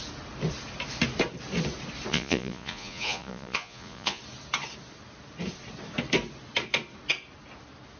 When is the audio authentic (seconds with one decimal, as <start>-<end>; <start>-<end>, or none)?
0.0-2.1; 4.2-8.0